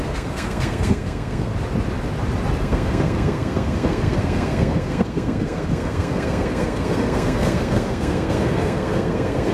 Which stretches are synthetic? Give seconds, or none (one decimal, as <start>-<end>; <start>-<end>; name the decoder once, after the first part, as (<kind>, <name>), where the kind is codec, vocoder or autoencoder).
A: 0.0-1.5 (codec, SNAC); 2.6-9.5